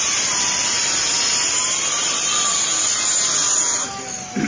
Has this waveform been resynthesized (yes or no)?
no